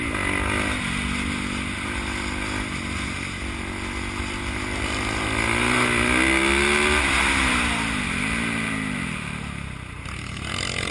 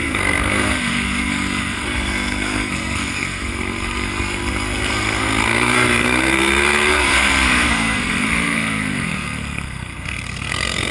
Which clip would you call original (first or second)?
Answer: first